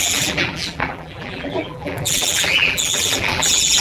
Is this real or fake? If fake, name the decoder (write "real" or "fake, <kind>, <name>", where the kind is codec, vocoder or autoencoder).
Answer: fake, vocoder, BigVGAN v2